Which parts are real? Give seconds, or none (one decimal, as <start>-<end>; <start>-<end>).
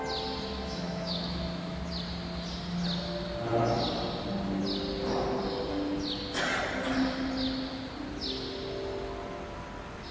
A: 0.0-0.5; 1.8-10.1